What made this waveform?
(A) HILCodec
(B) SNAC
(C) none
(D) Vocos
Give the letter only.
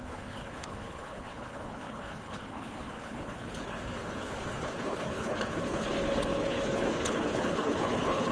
A